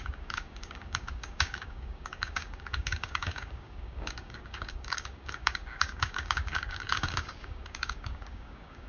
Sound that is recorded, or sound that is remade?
remade